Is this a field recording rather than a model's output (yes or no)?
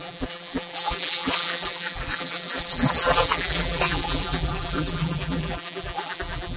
no